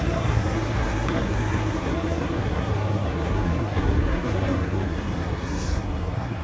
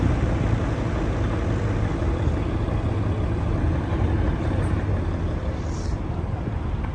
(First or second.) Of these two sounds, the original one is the second